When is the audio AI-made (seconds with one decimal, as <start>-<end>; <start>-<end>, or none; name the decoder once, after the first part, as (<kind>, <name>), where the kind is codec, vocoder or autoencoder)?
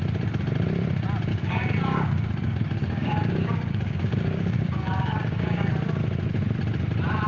1.3-5.7 (codec, DAC)